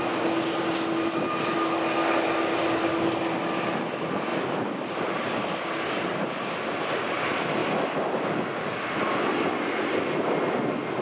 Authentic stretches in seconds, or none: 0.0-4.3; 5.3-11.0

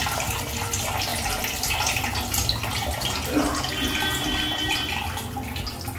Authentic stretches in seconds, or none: 0.0-6.0

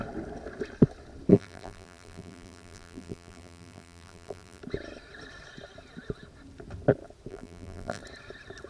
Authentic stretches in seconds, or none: 0.0-1.3; 4.6-7.3; 8.0-8.7

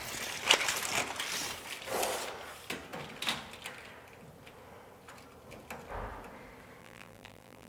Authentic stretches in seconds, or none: 0.0-6.8

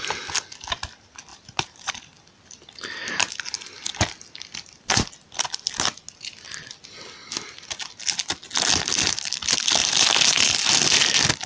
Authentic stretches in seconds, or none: 0.0-1.3; 1.9-9.8; 10.4-11.5

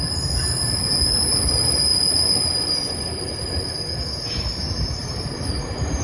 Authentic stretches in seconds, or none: 0.0-1.9; 3.8-5.0

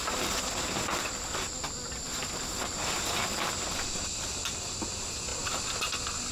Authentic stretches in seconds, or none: 0.0-6.3

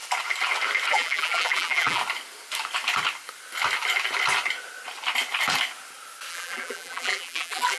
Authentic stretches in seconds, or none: 0.0-0.9; 2.0-6.3